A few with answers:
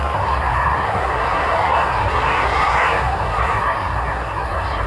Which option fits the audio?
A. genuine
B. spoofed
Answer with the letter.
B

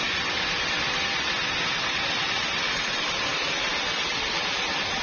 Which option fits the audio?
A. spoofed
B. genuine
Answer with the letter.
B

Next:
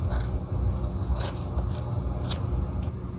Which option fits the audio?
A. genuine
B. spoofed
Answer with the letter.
A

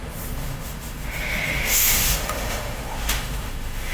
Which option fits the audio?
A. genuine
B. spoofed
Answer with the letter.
B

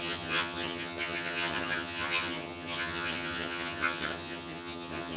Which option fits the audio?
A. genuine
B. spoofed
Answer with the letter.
B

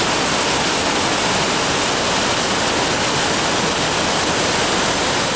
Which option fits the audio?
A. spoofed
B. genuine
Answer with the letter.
B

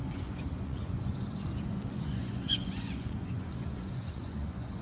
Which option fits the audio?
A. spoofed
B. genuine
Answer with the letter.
A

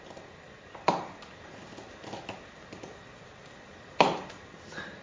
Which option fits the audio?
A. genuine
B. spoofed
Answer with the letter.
A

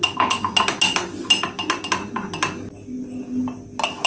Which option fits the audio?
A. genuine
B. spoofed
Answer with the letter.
A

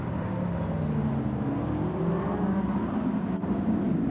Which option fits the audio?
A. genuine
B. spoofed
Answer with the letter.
A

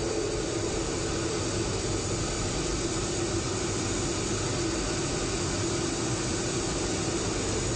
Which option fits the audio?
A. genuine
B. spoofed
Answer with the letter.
A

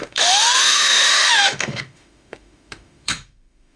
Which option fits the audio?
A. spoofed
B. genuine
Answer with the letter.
A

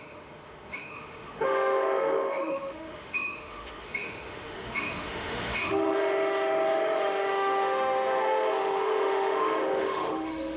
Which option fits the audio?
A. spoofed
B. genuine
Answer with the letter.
A